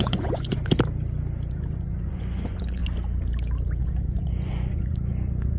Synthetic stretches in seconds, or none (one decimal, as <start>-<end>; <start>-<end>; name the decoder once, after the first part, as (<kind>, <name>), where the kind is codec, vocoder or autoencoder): 0.0-0.6 (vocoder, Vocos); 1.5-2.8; 3.8-5.6